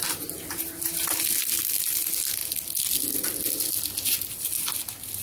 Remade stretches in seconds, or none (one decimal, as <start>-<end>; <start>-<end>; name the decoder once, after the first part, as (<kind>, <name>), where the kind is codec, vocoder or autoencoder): 0.0-1.2 (vocoder, BigVGAN v2)